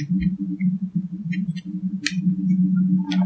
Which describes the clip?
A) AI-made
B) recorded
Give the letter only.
B